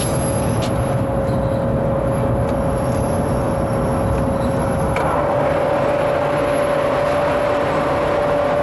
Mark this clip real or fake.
real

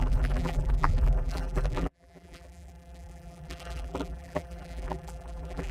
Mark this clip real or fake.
fake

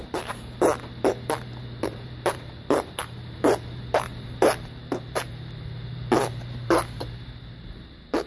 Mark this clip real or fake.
fake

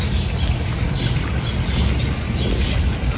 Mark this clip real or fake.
real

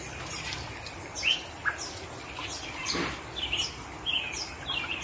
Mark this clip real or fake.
real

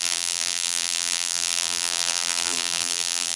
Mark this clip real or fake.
fake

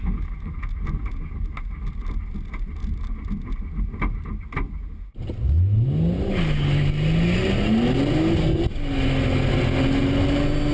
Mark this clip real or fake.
real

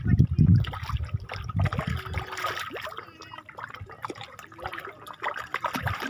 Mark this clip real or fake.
real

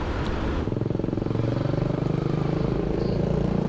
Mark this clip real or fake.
fake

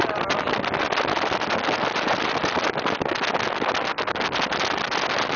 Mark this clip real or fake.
real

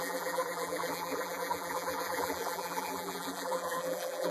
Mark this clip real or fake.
fake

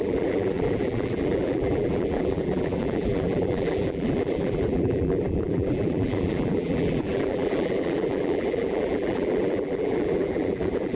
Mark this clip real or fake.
fake